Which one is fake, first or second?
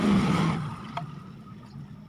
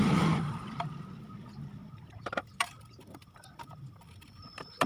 second